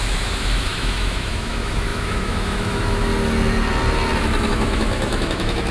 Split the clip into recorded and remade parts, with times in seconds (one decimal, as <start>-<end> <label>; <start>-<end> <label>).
0.0-3.1 remade; 3.1-4.5 recorded; 4.5-5.7 remade

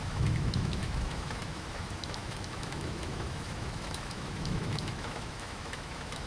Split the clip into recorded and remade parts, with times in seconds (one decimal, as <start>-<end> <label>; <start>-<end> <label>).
0.0-6.3 remade

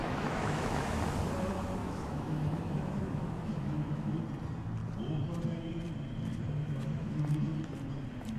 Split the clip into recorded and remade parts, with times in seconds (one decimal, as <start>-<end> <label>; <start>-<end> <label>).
0.0-1.0 remade; 1.0-1.8 recorded; 1.8-4.2 remade; 4.2-6.6 recorded; 6.6-7.2 remade; 7.2-8.4 recorded

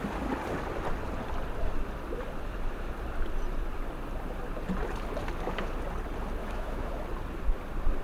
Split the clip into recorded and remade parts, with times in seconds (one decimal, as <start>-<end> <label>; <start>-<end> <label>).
0.0-6.4 recorded; 6.4-6.9 remade; 6.9-8.0 recorded